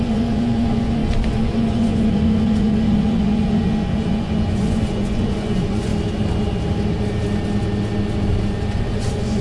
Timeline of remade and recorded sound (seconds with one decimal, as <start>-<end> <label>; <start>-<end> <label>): 0.0-5.9 remade; 5.9-8.7 recorded; 8.7-9.4 remade

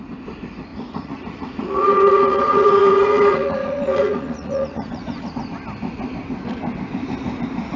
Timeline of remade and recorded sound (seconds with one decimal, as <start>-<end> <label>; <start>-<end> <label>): 0.0-0.7 recorded; 0.7-5.3 remade; 5.3-7.8 recorded

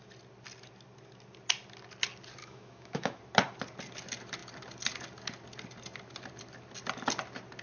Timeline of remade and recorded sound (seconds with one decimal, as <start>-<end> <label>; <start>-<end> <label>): 0.0-2.4 recorded; 2.4-3.2 remade; 3.2-7.6 recorded